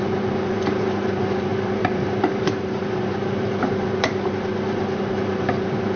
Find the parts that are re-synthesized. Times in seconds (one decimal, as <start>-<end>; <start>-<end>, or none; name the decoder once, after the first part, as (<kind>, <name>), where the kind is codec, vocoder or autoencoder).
0.0-6.0 (vocoder, BigVGAN v2)